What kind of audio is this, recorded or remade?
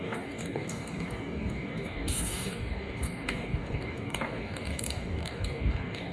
remade